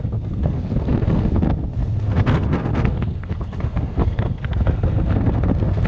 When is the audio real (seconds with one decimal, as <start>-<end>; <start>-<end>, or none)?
none